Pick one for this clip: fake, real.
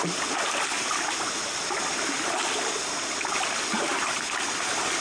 real